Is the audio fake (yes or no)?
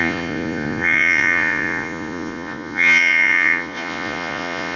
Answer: yes